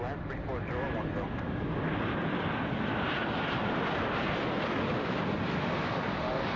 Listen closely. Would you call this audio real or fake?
real